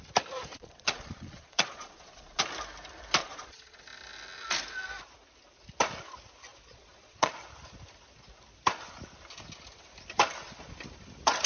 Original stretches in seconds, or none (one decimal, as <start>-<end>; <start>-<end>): 0.0-0.5; 2.4-3.2; 3.8-6.5; 7.3-11.5